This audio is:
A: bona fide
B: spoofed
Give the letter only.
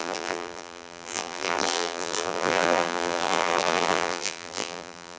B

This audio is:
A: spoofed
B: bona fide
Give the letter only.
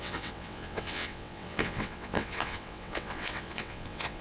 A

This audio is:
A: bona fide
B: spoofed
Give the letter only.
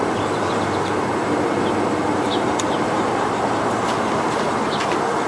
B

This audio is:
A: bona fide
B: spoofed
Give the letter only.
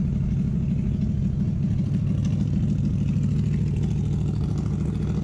A